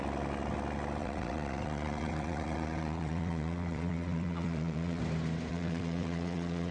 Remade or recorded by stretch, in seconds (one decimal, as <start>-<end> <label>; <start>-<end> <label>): 0.0-1.0 recorded; 1.0-5.0 remade; 5.0-5.5 recorded; 5.5-6.7 remade